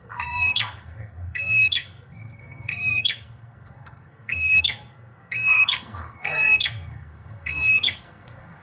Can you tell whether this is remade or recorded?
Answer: remade